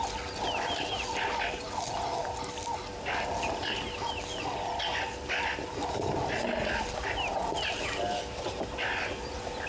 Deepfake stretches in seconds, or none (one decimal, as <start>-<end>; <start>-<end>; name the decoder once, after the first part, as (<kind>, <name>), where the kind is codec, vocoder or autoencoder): none